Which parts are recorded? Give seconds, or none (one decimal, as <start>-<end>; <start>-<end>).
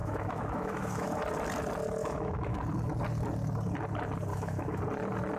1.2-2.0; 2.6-4.3; 4.8-5.4